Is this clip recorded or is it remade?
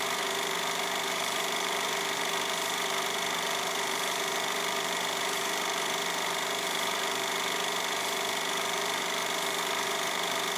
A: remade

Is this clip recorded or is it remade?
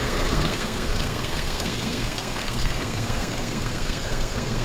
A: remade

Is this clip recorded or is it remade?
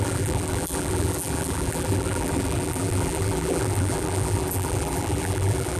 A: remade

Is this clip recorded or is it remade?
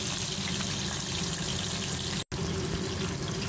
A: recorded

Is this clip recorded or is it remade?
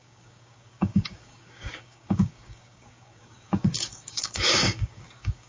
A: remade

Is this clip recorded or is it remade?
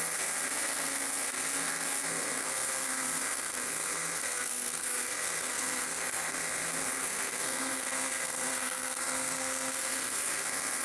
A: remade